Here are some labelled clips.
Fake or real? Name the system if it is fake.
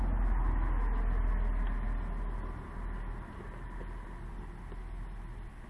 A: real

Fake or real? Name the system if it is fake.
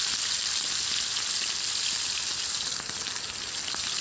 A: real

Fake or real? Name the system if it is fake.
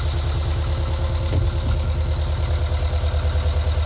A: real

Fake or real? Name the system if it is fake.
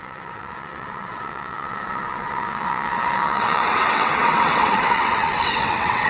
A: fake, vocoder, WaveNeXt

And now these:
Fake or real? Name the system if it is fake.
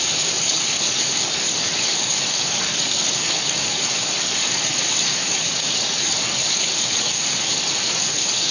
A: fake, codec, DAC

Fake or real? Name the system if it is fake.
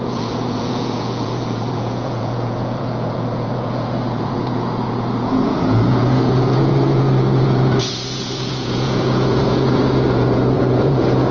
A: fake, vocoder, Vocos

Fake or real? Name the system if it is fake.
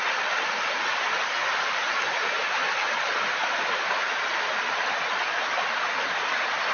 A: real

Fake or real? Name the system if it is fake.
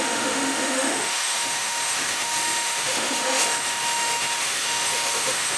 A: fake, autoencoder, DAC-VAE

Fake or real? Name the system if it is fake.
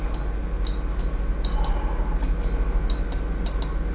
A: real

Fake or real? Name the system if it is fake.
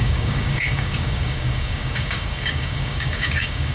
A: fake, codec, DAC